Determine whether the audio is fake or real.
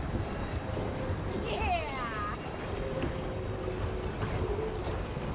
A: real